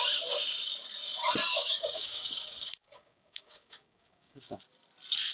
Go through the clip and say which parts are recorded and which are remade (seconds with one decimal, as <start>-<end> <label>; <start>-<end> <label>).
0.0-1.4 recorded; 1.4-4.6 remade; 4.6-5.3 recorded

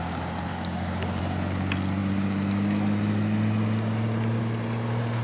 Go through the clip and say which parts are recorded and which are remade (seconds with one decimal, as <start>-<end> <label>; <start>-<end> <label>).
0.0-0.5 recorded; 0.5-1.2 remade; 1.2-5.2 recorded

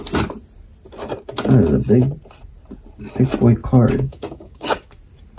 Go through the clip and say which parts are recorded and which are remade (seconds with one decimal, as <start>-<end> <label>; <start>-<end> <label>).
0.0-3.6 recorded; 3.6-5.0 remade; 5.0-5.4 recorded

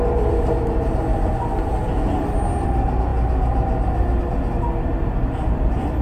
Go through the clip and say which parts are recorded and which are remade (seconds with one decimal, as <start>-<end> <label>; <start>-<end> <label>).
0.0-6.0 recorded

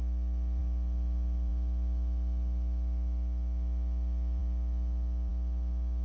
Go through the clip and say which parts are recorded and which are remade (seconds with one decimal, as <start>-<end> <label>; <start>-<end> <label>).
0.0-6.0 recorded